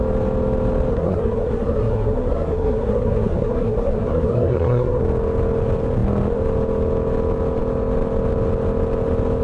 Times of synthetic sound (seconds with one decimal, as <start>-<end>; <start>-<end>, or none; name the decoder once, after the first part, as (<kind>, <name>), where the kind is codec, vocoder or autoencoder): 0.9-5.0 (codec, SNAC)